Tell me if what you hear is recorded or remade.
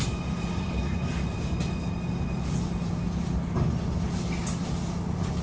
recorded